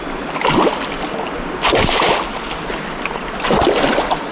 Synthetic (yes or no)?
no